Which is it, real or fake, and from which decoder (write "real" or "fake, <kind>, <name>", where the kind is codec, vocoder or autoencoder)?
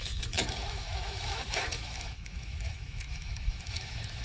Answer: fake, autoencoder, DAC-VAE